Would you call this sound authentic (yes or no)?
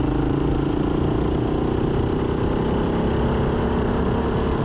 yes